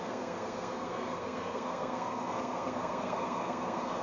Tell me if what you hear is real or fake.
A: fake